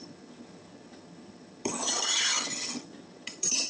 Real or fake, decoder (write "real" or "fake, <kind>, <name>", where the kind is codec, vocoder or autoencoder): fake, vocoder, HiFi-GAN